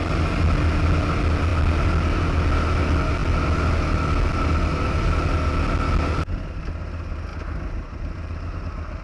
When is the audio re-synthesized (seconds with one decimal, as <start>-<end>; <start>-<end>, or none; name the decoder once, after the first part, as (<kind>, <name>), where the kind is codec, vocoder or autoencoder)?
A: none